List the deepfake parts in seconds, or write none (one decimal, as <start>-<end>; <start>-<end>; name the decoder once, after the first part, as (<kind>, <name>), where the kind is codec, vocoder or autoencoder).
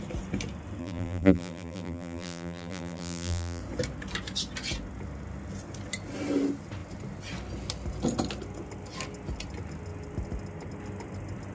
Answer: 0.8-3.6 (vocoder, BigVGAN v2)